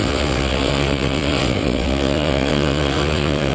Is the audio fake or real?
fake